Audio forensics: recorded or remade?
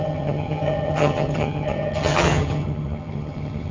remade